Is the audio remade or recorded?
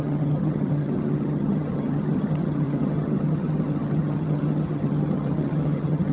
remade